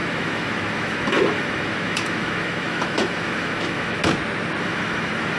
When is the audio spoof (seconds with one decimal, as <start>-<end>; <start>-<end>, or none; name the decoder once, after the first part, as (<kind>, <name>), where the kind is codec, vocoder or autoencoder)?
0.0-4.0 (autoencoder, DAC-VAE); 4.6-5.4